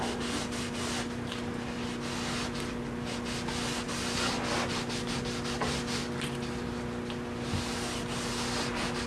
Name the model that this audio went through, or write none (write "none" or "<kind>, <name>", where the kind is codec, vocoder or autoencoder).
none